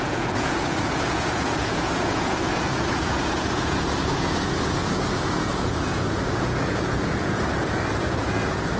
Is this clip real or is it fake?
fake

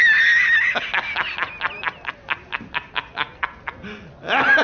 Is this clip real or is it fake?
real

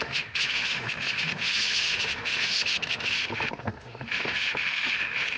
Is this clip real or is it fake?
fake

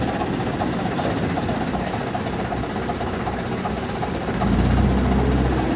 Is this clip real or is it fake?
real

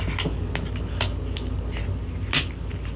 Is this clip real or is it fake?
real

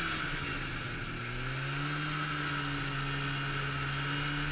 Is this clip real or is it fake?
real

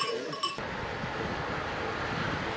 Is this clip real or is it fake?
real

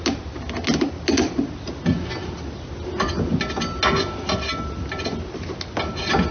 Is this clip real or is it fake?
real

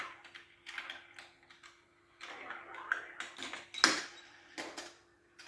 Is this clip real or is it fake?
real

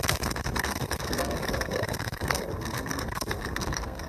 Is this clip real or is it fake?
fake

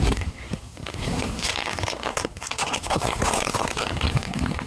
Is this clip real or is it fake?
fake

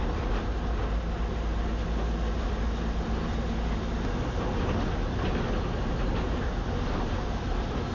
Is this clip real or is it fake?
real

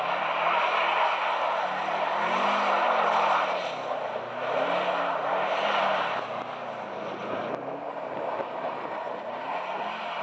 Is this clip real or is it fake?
real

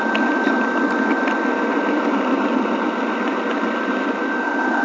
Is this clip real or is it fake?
real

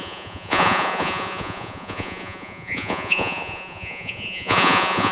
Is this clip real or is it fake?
fake